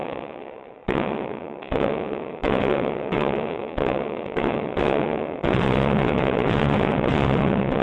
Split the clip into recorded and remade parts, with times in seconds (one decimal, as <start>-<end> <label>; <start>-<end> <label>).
0.0-7.8 remade